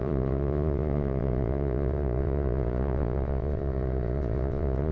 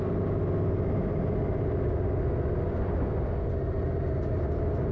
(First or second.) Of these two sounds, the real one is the second